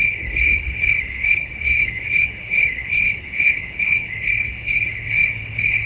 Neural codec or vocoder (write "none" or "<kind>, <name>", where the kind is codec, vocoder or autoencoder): codec, HILCodec